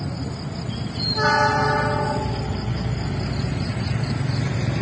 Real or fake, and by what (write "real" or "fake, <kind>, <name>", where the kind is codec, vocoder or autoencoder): real